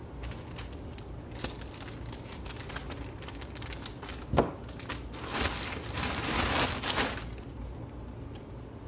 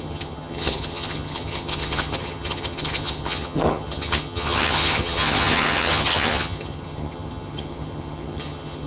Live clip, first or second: first